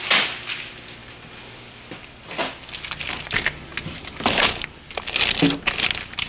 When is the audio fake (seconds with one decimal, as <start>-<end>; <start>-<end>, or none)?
none